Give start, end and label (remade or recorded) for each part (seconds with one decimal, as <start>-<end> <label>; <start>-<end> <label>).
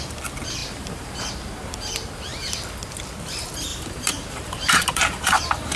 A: 0.0-0.6 recorded; 0.6-1.3 remade; 1.3-3.7 recorded; 3.7-5.8 remade